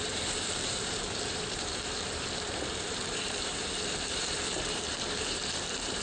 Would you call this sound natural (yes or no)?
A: no